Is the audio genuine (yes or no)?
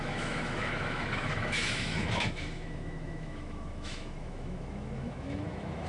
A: no